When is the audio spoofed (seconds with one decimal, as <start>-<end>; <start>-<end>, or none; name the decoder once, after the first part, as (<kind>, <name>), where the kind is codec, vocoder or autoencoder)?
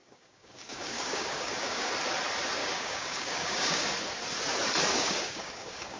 0.0-1.9 (codec, DAC); 2.6-3.9; 4.9-6.0